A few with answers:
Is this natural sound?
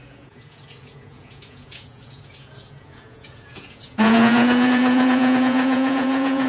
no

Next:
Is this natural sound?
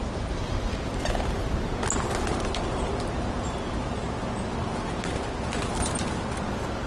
yes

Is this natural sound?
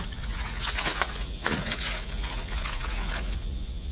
no